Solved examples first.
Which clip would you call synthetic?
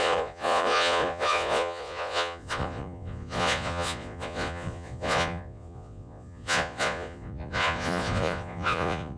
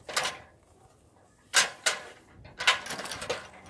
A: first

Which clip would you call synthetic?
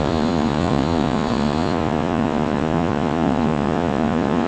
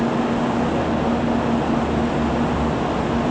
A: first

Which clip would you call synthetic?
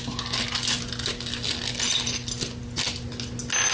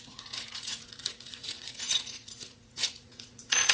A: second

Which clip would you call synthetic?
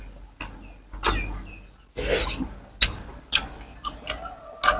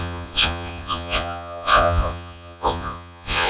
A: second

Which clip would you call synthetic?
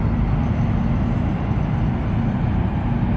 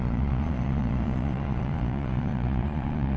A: second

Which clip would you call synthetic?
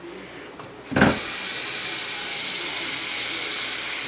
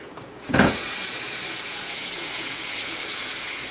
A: second